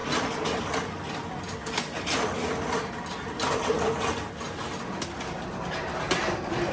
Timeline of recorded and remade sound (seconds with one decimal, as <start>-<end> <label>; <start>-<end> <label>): 0.0-6.7 recorded